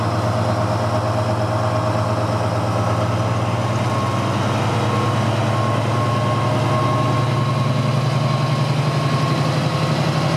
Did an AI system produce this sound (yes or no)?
no